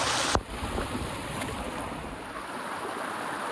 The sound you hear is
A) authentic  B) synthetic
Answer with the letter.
A